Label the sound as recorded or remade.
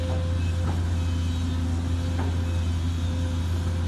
recorded